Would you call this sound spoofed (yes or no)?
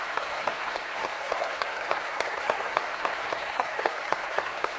yes